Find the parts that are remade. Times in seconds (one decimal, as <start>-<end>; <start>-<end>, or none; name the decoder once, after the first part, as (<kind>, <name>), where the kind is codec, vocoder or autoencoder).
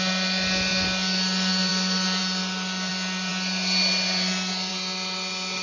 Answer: none